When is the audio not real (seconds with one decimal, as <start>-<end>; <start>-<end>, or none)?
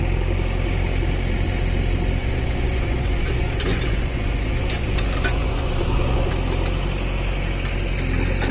2.2-6.3